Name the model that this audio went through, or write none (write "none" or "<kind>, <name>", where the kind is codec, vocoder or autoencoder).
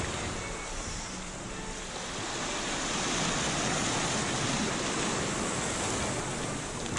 none